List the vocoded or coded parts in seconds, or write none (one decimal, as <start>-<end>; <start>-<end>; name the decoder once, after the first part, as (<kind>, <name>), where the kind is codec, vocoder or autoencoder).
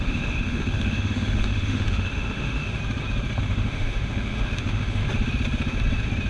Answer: 0.0-2.8 (autoencoder, DAC-VAE); 3.4-5.0